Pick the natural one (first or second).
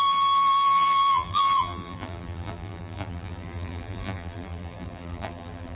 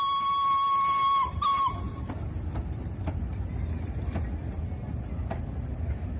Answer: second